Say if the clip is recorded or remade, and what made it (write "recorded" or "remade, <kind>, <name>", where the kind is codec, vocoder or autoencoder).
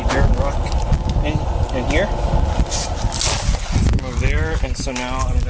recorded